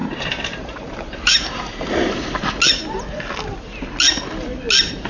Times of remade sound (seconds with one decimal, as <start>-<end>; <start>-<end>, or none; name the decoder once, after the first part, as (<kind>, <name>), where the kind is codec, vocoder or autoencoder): 0.0-2.4 (vocoder, BigVGAN v2)